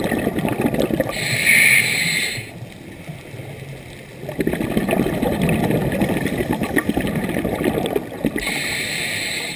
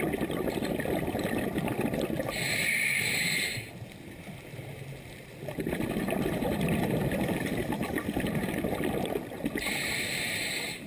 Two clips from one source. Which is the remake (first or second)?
second